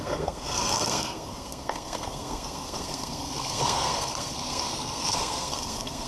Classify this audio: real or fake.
fake